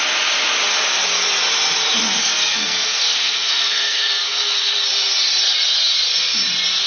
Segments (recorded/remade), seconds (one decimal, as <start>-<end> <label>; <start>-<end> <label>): 0.0-2.2 recorded; 2.2-4.7 remade; 4.7-6.9 recorded